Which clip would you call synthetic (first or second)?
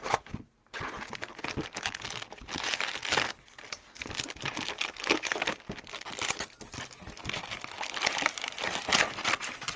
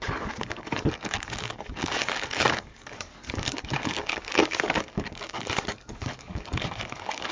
second